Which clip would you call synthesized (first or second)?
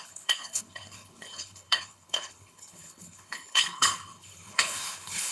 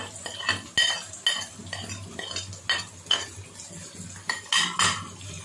first